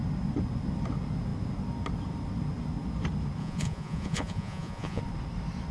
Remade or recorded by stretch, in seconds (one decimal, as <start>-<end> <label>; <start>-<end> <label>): 0.0-3.4 recorded; 3.4-5.0 remade; 5.0-5.7 recorded